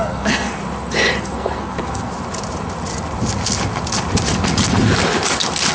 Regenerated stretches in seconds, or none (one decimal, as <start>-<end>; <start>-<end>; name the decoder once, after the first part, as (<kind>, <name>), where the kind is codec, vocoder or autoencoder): 0.0-0.6 (codec, SNAC); 1.2-2.1